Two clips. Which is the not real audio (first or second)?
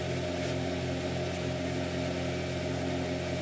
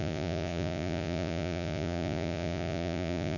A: second